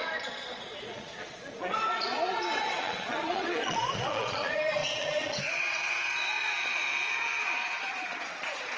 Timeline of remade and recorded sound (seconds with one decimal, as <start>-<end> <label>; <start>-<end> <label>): 0.0-8.8 remade